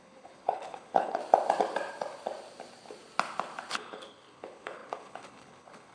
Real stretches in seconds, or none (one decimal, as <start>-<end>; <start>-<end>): 1.2-3.7

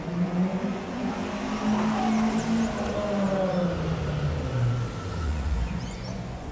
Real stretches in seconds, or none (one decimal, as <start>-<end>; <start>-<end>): 1.2-5.1

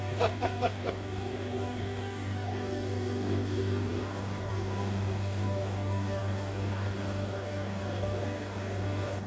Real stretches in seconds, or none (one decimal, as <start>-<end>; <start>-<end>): none

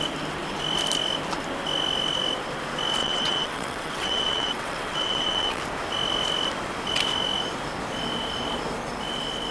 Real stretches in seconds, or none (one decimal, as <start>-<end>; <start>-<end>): 0.0-3.0; 5.6-9.5

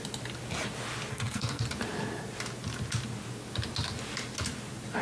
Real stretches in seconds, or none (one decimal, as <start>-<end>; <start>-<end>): 0.0-1.1; 1.6-5.0

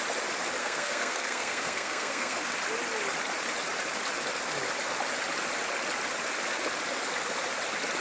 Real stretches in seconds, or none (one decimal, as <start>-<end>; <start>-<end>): 0.0-0.6; 2.4-8.0

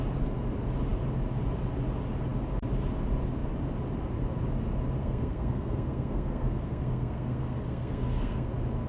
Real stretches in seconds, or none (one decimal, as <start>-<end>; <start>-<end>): 0.0-5.0; 8.5-8.9

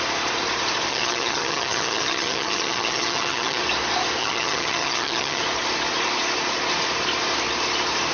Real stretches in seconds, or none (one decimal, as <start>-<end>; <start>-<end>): 0.0-0.9; 3.6-4.2; 5.4-8.1